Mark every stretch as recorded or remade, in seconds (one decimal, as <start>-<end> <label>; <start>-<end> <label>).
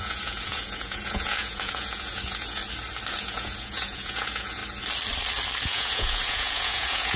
0.0-2.6 remade; 2.6-3.1 recorded; 3.1-4.6 remade; 4.6-5.6 recorded; 5.6-7.2 remade